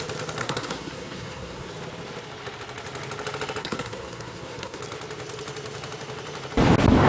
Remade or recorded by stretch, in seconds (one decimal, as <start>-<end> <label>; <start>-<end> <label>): 0.0-0.4 recorded; 0.4-1.7 remade; 1.7-3.6 recorded; 3.6-4.8 remade; 4.8-7.1 recorded